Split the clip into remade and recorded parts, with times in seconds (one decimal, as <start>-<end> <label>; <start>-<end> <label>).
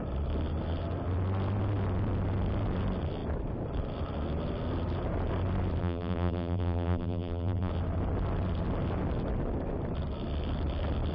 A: 0.0-5.8 recorded; 5.8-7.7 remade; 7.7-11.1 recorded